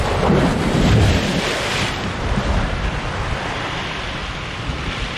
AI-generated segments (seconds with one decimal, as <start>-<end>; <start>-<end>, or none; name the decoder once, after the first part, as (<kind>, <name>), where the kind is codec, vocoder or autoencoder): 0.0-4.2 (vocoder, BigVGAN v2); 4.8-5.2